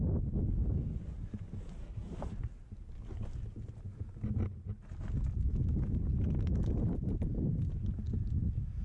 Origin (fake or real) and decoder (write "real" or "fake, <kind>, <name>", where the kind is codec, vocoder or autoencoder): real